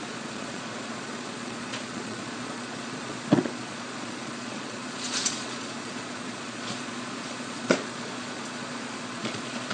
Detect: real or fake fake